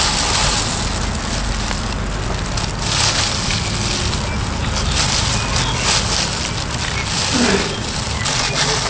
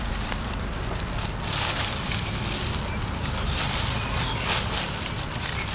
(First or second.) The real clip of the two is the first